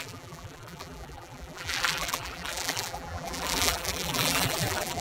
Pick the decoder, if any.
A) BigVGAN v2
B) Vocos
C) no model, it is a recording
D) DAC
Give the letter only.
A